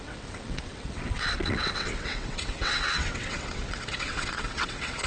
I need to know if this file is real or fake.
fake